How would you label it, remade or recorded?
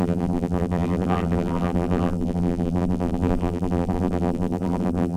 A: remade